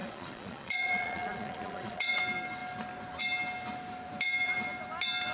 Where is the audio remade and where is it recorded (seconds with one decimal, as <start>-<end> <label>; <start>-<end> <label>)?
0.0-2.2 remade; 2.2-5.3 recorded